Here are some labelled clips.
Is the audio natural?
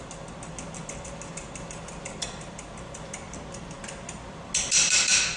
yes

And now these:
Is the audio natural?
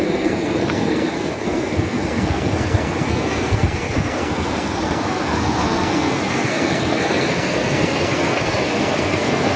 no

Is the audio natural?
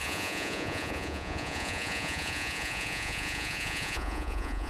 no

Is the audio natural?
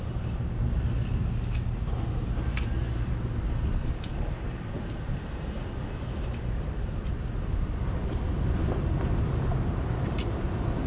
yes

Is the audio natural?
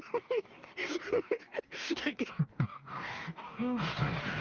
no